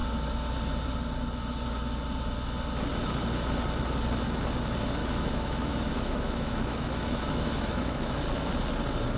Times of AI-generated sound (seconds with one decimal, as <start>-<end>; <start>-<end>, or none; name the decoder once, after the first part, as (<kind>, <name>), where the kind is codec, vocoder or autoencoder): 5.0-8.2 (autoencoder, DAC-VAE)